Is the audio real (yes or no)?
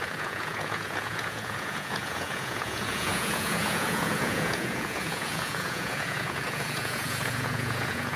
no